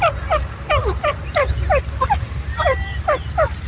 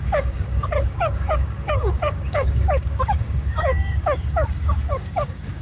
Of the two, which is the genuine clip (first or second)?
first